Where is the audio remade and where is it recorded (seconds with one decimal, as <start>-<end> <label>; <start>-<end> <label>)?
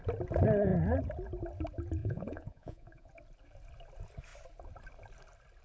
0.0-2.0 recorded; 2.0-3.1 remade; 3.1-5.6 recorded